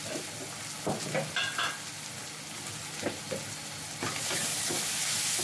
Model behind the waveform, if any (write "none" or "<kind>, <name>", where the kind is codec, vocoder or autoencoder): none